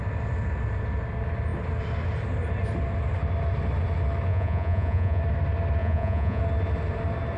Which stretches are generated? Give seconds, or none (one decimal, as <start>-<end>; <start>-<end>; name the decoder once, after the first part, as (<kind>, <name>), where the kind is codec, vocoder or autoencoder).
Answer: 4.3-5.2 (vocoder, Vocos); 5.8-6.4